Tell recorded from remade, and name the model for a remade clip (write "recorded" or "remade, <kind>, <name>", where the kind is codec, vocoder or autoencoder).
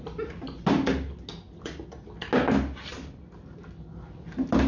recorded